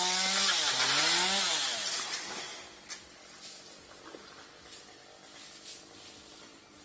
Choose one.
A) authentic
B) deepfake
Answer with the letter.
A